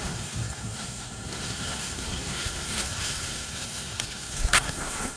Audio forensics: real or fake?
fake